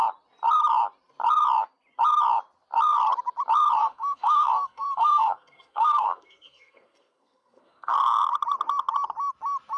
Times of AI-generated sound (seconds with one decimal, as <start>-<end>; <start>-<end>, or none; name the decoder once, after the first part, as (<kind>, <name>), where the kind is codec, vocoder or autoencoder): 3.8-7.9 (codec, SNAC)